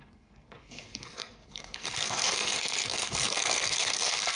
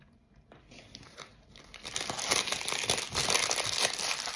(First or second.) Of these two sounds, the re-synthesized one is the first